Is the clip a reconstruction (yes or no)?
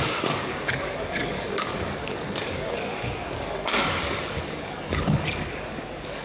yes